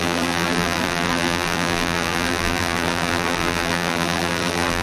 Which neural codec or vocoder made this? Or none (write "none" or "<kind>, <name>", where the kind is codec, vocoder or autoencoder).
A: vocoder, BigVGAN v2